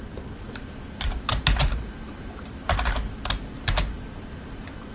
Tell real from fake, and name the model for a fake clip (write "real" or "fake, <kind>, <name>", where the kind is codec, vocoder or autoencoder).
fake, vocoder, BigVGAN v2